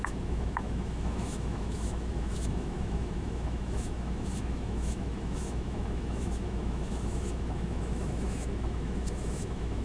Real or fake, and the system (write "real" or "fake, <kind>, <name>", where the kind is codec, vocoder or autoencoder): fake, autoencoder, DAC-VAE